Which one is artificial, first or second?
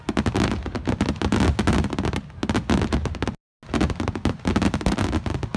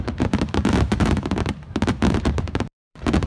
second